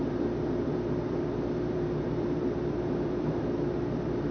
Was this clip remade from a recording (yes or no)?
yes